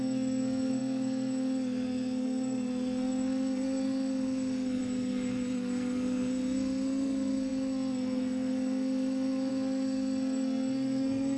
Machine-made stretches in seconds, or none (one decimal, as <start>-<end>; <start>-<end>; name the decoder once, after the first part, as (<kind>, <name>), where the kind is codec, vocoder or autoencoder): 0.0-11.4 (codec, SNAC)